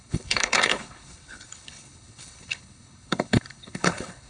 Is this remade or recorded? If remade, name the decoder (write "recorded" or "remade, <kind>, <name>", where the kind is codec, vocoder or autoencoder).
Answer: remade, codec, HILCodec